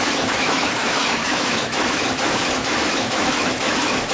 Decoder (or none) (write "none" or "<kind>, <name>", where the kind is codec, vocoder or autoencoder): autoencoder, DAC-VAE